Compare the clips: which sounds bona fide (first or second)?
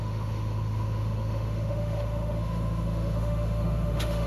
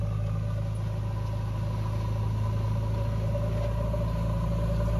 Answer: second